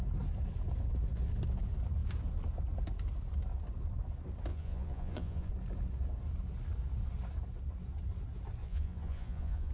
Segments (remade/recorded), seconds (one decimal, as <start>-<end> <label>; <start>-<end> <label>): 0.0-4.5 recorded; 4.5-5.5 remade; 5.5-8.6 recorded; 8.6-9.7 remade